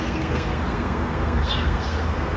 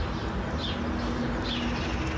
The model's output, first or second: first